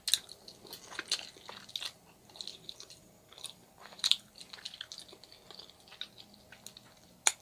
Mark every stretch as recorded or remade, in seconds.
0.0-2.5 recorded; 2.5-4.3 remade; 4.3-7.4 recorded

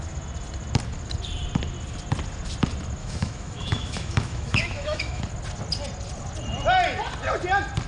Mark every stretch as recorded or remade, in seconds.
0.0-3.0 recorded; 3.0-5.2 remade; 5.2-7.9 recorded

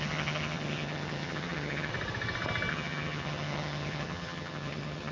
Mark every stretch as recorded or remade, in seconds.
0.0-1.9 remade; 1.9-2.7 recorded; 2.7-5.1 remade